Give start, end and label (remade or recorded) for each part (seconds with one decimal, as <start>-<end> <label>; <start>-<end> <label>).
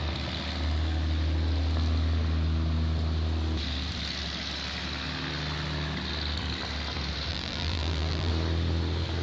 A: 0.0-7.3 recorded; 7.3-8.3 remade; 8.3-9.2 recorded